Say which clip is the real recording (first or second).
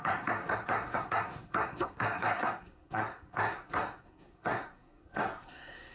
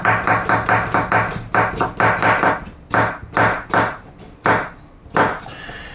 second